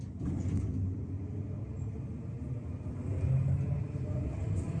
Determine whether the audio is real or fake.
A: real